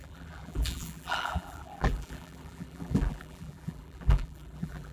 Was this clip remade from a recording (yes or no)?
yes